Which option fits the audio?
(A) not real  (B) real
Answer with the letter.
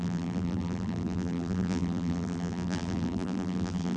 A